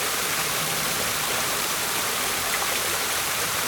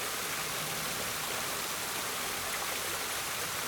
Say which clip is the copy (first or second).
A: first